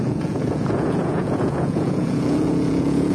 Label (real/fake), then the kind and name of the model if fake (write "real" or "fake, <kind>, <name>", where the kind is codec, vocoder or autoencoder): fake, vocoder, Vocos